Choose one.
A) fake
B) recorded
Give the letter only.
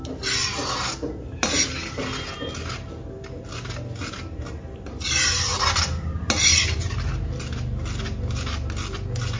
B